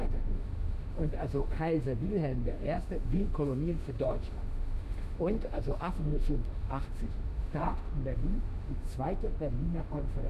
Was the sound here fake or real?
fake